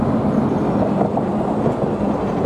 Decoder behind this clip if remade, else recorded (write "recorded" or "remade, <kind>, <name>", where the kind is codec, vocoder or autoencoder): recorded